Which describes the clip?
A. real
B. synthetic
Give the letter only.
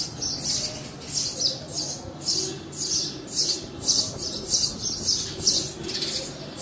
A